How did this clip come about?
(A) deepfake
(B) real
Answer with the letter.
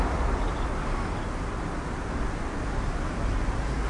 B